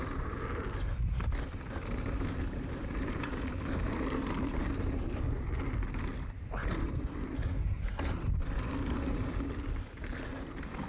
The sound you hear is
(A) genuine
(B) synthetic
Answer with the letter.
A